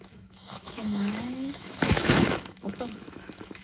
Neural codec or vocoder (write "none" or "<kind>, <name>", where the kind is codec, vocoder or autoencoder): autoencoder, DAC-VAE